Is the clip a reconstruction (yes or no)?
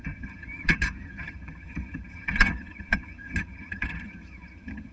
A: yes